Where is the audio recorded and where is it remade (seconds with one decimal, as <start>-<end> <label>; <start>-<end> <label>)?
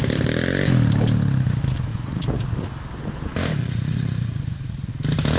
0.0-1.9 recorded; 1.9-2.7 remade; 2.7-3.6 recorded; 3.6-4.9 remade; 4.9-5.4 recorded